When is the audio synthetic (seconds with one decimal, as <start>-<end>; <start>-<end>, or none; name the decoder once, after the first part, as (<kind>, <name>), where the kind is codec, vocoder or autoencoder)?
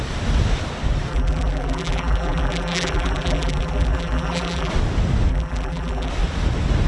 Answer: 1.1-4.7 (vocoder, BigVGAN v2); 5.3-6.1